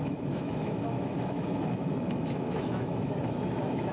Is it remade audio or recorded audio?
remade